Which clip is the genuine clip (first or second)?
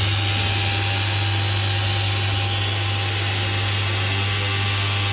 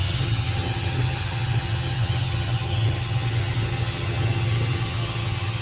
first